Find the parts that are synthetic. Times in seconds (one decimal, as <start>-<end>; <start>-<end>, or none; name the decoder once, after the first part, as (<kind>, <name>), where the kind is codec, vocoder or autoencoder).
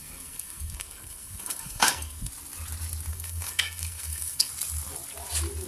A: 0.0-2.3 (codec, SNAC); 3.1-4.5